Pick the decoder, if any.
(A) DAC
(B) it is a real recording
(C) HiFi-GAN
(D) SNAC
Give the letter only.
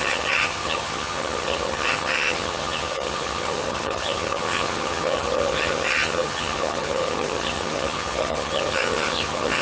C